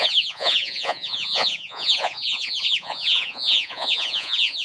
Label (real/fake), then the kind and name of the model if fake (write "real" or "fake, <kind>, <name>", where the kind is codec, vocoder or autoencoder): fake, vocoder, Vocos